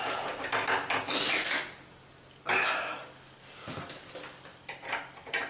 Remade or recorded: recorded